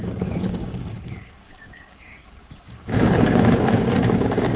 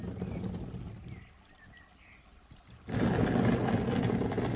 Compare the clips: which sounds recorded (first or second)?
second